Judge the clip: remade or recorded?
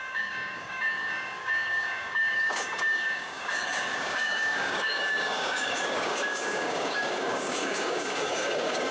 remade